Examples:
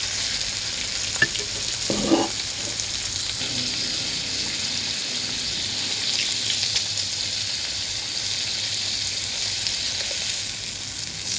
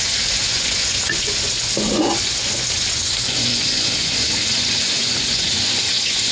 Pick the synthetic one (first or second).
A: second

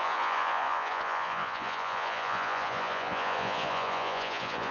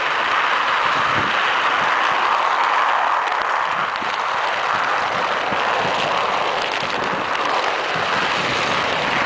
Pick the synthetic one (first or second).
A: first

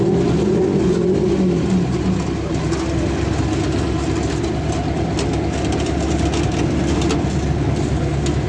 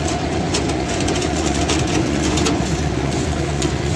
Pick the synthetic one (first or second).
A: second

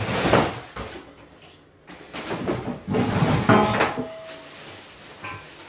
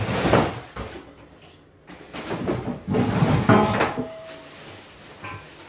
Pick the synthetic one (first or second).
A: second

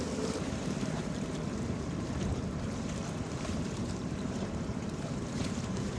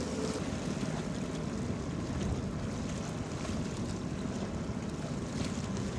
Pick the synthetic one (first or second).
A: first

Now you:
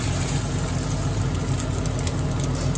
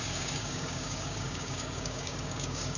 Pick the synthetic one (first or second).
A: second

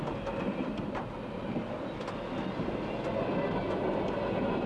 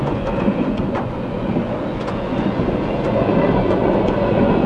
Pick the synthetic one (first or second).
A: second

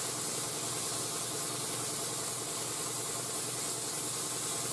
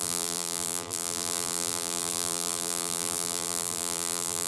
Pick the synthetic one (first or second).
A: second